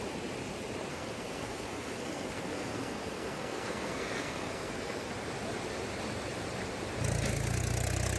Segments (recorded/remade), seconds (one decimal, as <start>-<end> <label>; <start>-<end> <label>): 0.0-0.9 recorded; 0.9-5.1 remade; 5.1-8.2 recorded

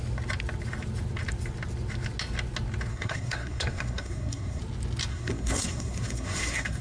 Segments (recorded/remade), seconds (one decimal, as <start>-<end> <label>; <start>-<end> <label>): 0.0-2.9 recorded; 2.9-4.6 remade; 4.6-5.1 recorded; 5.1-6.8 remade

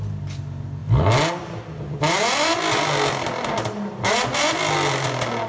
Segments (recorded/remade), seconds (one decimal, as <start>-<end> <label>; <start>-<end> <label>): 0.0-5.5 recorded

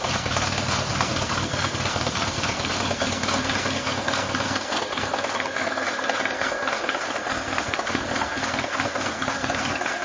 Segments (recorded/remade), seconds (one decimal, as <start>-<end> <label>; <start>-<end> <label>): 0.0-10.0 remade

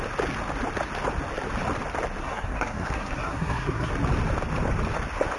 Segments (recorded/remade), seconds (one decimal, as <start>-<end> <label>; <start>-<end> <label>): 0.0-2.2 recorded; 2.2-3.9 remade; 3.9-5.4 recorded

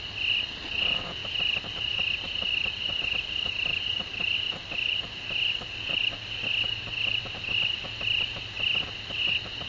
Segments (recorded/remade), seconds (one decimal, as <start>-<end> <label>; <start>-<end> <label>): 0.0-9.7 recorded

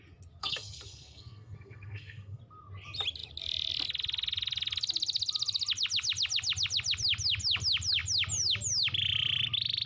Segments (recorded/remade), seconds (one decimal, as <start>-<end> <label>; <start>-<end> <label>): 0.0-0.4 recorded; 0.4-2.4 remade; 2.4-9.9 recorded